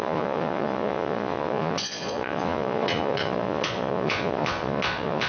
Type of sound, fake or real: fake